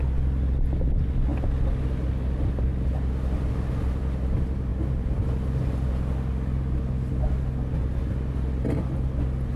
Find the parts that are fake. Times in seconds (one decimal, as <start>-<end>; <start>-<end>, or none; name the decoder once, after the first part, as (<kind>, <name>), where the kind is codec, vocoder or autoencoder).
none